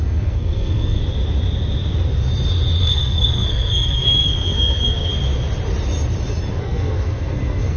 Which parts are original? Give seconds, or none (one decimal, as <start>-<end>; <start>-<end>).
1.0-2.8; 5.1-6.6